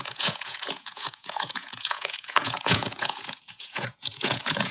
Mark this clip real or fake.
fake